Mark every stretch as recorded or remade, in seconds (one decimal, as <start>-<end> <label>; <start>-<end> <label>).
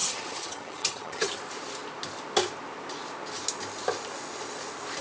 0.0-1.4 remade; 1.4-5.0 recorded